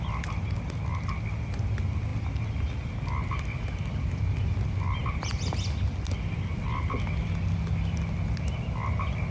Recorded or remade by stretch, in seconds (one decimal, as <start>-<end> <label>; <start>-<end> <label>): 0.0-9.3 recorded